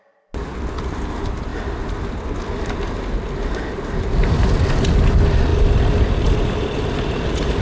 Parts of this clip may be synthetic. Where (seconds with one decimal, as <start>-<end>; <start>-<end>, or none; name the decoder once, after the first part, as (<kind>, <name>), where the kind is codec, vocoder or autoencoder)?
none

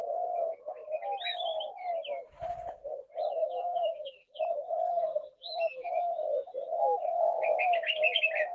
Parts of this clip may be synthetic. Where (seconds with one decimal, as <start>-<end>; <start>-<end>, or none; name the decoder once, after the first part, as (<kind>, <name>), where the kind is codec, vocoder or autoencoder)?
3.4-4.4 (vocoder, BigVGAN v2); 4.9-5.9

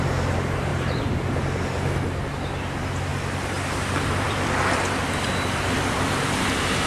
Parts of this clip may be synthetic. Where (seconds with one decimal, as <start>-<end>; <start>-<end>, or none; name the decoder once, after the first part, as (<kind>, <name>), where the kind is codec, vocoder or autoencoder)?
0.7-1.3 (vocoder, BigVGAN v2); 3.1-6.2

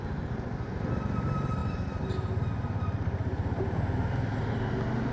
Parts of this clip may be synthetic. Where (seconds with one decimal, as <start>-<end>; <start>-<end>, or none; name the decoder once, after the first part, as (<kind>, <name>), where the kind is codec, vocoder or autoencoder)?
1.6-3.6 (vocoder, BigVGAN v2)

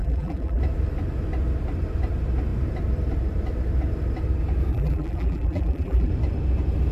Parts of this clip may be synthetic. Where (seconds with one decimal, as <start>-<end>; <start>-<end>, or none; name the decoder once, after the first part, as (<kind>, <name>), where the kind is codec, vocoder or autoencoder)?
0.0-0.6 (vocoder, BigVGAN v2); 4.7-6.1

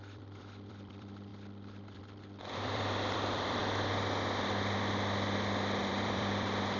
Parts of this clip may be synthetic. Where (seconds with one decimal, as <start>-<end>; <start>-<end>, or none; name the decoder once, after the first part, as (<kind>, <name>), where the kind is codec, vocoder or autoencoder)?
0.0-3.6 (vocoder, BigVGAN v2); 5.8-6.8